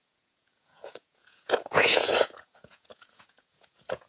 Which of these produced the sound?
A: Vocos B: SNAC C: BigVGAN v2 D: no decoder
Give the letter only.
A